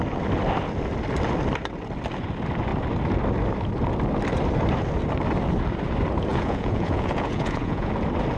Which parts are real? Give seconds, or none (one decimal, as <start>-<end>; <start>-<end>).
0.0-6.3; 7.9-8.4